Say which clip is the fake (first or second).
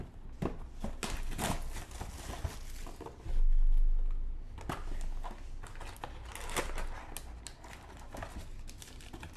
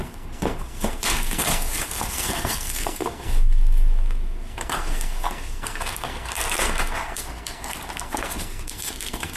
second